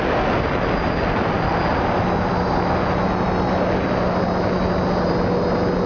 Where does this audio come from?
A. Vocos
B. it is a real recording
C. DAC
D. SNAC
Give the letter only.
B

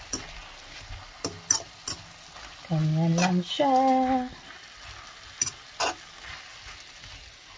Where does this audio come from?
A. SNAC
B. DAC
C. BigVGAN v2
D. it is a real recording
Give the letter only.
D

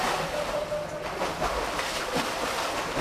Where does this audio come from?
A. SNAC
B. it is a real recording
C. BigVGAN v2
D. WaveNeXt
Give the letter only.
C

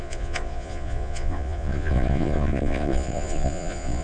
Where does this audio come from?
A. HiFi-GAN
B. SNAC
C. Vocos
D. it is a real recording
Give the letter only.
C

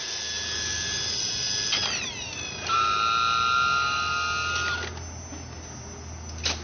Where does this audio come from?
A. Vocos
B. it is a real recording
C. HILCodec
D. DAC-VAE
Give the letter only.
B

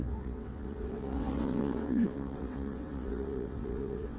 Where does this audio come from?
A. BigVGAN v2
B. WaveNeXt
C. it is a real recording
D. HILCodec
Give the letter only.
B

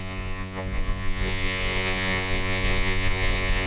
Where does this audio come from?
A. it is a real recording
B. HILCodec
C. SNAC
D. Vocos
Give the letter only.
D